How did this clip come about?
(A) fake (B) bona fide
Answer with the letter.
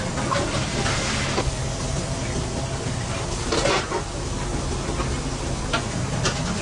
B